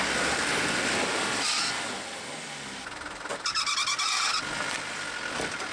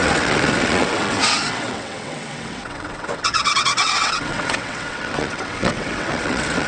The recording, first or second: first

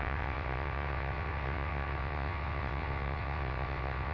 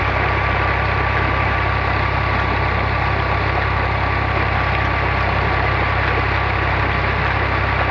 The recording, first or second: second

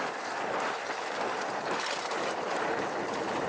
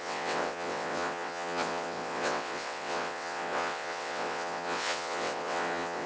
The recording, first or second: first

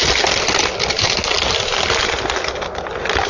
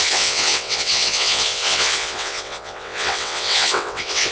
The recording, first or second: first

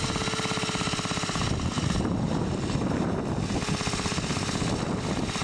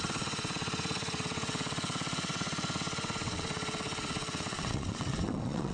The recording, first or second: first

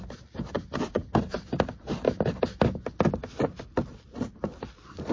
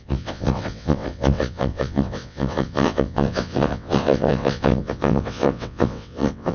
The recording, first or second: first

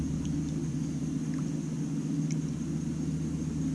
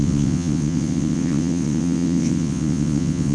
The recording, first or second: first